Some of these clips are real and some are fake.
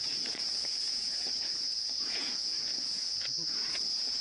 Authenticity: fake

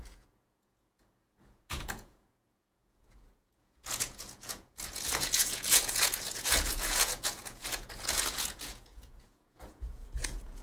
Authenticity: fake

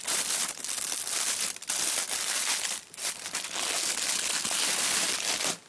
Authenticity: real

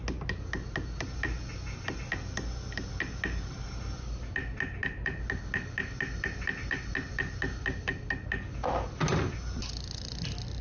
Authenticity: real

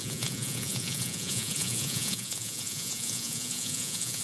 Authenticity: fake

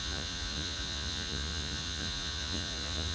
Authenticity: fake